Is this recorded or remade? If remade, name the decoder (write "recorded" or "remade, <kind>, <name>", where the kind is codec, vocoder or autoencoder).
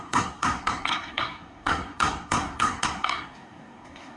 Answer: remade, codec, SNAC